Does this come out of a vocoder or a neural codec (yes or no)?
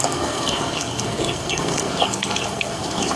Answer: yes